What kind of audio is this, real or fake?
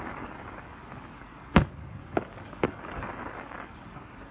fake